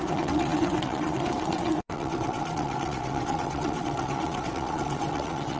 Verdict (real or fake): fake